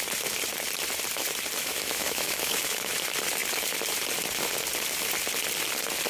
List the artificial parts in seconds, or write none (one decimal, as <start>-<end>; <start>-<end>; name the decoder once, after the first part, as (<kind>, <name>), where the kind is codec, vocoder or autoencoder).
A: 1.6-2.9 (autoencoder, DAC-VAE)